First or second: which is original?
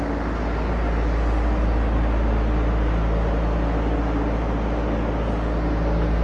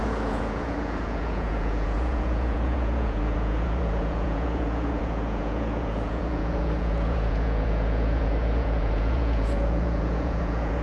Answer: first